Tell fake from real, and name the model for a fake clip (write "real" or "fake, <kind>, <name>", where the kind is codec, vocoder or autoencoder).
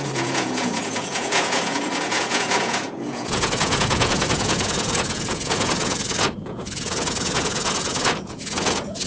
fake, vocoder, Vocos